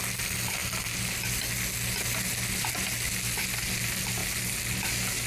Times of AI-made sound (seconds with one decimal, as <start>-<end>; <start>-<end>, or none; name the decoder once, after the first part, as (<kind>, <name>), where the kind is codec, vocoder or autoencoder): none